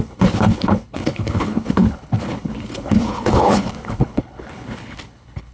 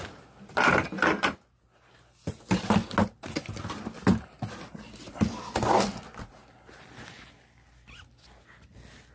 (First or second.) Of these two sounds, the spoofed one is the first